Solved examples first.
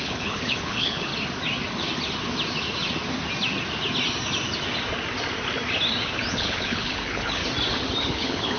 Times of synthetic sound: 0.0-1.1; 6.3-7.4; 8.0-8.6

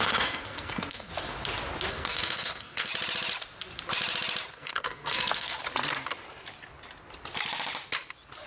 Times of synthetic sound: 0.0-1.1; 1.9-2.9; 4.5-5.6

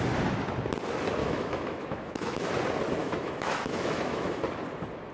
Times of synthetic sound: 1.2-2.5; 3.0-4.4

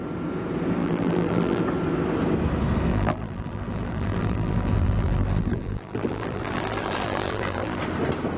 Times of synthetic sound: 0.8-1.6; 2.9-7.8

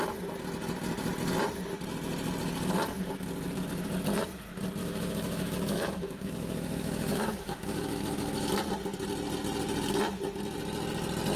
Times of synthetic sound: 4.8-8.5